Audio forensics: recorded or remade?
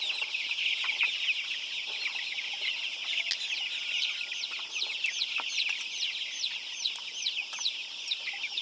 recorded